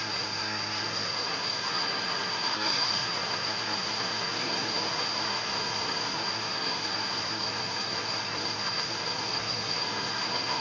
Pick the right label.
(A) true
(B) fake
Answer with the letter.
B